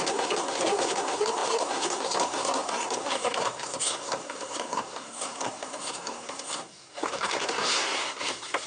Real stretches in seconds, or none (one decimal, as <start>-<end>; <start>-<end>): none

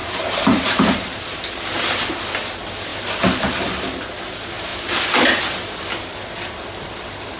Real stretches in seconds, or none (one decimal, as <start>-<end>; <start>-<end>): 1.2-7.4